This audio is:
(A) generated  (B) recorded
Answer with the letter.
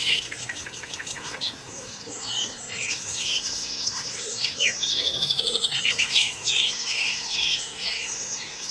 A